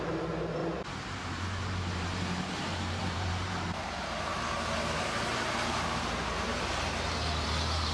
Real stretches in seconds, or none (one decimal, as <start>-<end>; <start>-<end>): 4.3-5.0